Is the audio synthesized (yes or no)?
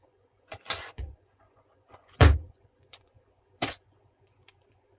yes